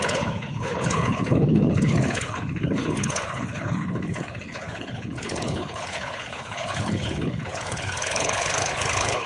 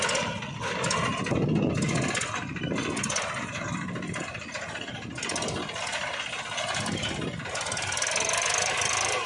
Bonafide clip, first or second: second